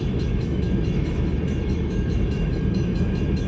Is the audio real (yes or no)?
no